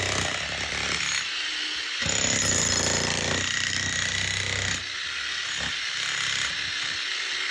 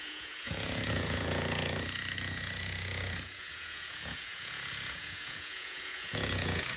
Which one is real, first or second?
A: first